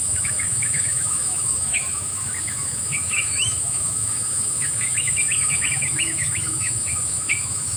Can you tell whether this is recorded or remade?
remade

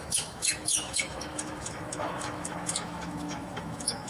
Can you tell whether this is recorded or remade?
remade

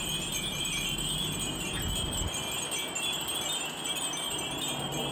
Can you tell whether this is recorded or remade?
recorded